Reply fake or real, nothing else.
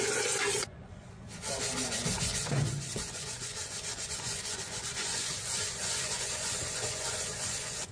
fake